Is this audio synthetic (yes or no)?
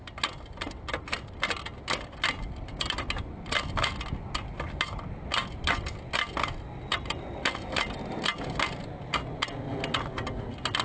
no